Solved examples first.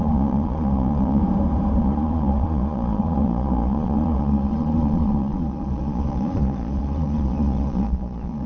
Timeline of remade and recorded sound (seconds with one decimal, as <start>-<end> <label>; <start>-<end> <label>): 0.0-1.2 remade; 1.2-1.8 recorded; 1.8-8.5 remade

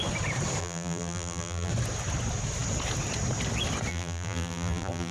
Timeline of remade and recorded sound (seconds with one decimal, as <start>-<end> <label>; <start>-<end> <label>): 0.0-0.6 recorded; 0.6-1.7 remade; 1.7-3.9 recorded; 3.9-5.1 remade

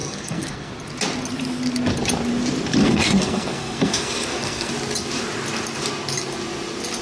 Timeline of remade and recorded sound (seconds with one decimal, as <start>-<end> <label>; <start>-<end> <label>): 0.0-0.7 remade; 0.7-2.8 recorded; 2.8-4.7 remade; 4.7-7.0 recorded